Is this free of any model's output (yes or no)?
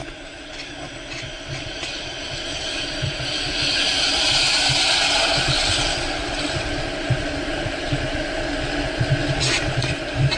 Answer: yes